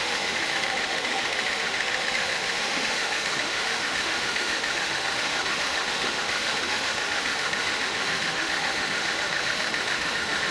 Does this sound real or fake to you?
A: fake